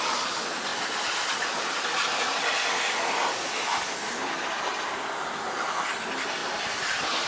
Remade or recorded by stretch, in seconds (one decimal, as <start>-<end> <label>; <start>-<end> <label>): 0.0-6.4 recorded; 6.4-7.3 remade